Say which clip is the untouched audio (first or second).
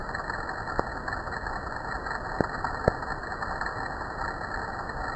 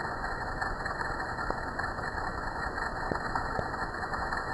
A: first